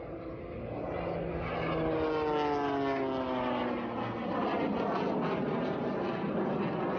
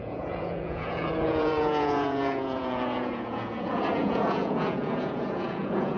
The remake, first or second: second